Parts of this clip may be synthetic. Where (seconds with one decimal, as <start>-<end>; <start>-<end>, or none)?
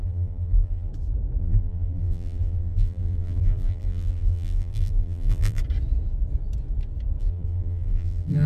0.0-0.9; 1.4-5.6; 7.2-8.5